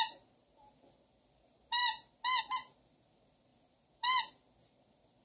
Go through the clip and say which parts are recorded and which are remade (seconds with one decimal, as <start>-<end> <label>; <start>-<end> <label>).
0.0-5.2 recorded